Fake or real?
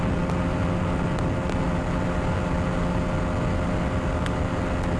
real